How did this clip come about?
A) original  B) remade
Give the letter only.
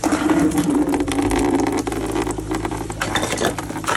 B